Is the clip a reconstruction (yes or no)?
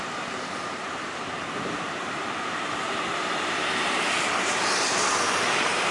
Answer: yes